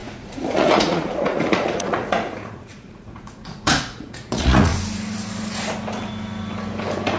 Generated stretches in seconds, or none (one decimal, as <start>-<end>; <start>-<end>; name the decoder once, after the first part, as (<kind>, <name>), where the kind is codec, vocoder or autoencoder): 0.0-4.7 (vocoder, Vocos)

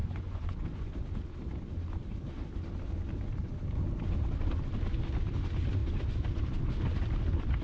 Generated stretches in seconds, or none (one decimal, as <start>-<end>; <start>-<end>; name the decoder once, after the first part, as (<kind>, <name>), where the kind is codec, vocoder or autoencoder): 0.0-0.9 (vocoder, Vocos)

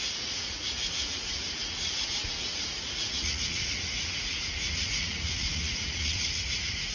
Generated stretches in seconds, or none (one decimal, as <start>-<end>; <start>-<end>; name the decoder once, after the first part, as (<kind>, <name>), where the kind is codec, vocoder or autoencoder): 0.0-6.9 (vocoder, Vocos)

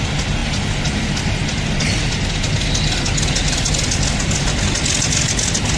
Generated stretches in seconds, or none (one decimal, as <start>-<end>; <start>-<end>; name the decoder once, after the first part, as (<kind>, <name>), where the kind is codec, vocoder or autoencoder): none

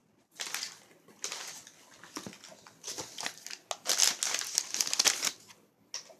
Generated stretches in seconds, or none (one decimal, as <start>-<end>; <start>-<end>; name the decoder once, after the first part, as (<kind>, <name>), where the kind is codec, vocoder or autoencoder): none

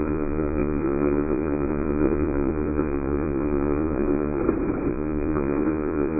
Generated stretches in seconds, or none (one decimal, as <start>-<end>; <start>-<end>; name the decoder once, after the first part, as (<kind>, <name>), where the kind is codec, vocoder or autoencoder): 0.0-4.4 (vocoder, Vocos); 4.9-6.2